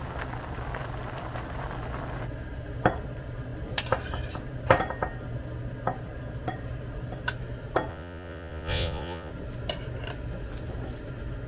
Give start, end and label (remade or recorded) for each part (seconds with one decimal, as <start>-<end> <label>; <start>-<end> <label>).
0.0-7.9 recorded; 7.9-9.3 remade; 9.3-11.5 recorded